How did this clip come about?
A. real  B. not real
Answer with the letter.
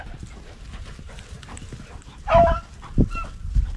A